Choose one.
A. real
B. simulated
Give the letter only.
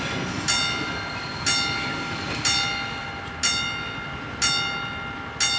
A